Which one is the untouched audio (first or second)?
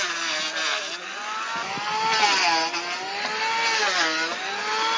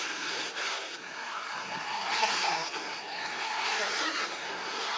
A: first